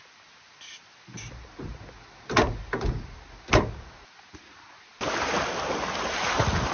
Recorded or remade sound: recorded